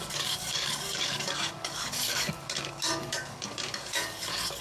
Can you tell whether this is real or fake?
fake